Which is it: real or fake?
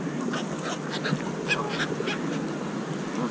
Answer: real